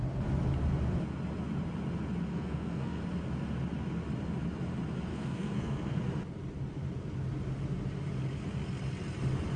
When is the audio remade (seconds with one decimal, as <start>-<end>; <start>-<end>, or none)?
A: 2.3-3.0; 5.1-6.0